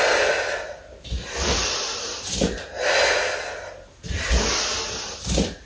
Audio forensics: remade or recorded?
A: recorded